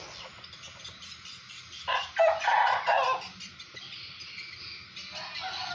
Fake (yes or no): no